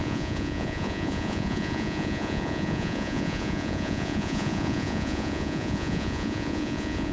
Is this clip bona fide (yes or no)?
no